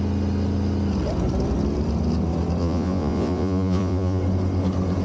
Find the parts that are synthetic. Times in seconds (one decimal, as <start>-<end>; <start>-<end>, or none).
2.6-4.2